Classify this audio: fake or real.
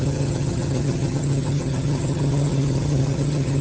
fake